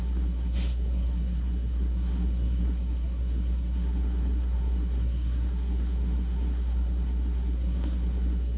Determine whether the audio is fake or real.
fake